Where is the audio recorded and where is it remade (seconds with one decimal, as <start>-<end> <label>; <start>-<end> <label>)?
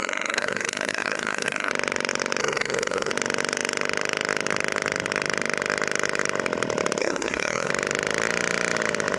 0.0-1.7 remade; 1.7-2.4 recorded; 2.4-3.1 remade; 3.1-7.0 recorded; 7.0-7.7 remade; 7.7-9.2 recorded